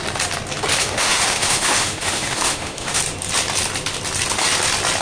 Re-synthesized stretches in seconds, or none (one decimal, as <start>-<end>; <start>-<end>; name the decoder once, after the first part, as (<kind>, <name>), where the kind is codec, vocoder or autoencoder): 0.8-3.0 (autoencoder, DAC-VAE)